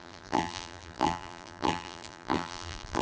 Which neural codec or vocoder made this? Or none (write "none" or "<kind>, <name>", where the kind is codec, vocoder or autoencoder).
vocoder, BigVGAN v2